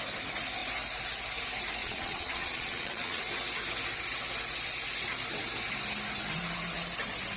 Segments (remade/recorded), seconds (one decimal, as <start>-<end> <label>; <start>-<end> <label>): 0.0-1.8 recorded; 1.8-3.2 remade; 3.2-7.4 recorded